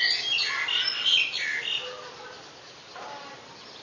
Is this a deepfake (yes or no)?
no